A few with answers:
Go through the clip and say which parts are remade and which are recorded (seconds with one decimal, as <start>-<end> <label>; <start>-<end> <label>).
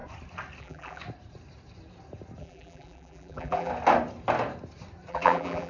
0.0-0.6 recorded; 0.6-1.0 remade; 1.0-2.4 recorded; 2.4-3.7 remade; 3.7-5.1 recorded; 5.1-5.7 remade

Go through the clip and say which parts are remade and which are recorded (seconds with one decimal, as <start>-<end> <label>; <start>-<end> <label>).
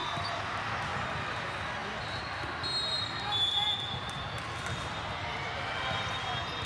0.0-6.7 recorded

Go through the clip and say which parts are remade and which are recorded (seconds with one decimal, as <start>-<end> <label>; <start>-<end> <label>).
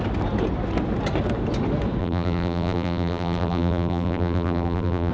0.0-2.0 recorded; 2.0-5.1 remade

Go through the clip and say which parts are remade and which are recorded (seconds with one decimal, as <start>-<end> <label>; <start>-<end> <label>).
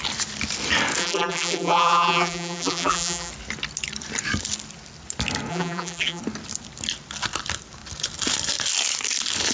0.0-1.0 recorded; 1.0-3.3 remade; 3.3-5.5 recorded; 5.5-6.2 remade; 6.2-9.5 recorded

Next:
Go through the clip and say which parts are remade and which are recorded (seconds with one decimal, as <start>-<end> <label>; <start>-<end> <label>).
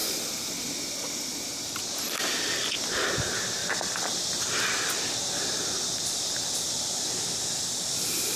0.0-0.5 remade; 0.5-1.3 recorded; 1.3-1.8 remade; 1.8-3.6 recorded; 3.6-8.4 remade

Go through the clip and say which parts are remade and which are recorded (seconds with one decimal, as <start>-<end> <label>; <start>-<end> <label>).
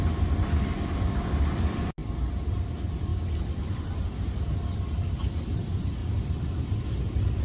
0.0-6.0 recorded; 6.0-7.0 remade; 7.0-7.4 recorded